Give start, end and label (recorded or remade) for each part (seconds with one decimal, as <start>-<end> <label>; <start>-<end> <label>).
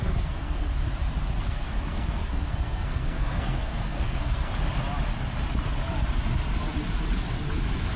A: 0.0-0.7 remade; 0.7-1.4 recorded; 1.4-4.5 remade; 4.5-8.0 recorded